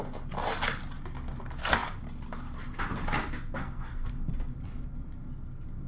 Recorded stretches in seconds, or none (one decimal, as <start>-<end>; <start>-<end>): 0.0-3.6; 4.1-5.9